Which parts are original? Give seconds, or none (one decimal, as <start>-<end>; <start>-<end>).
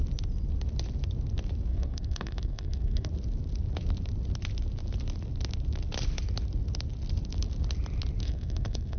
0.0-1.7; 3.1-8.2